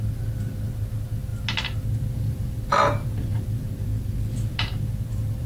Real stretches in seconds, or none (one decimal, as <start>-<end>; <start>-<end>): 0.0-5.5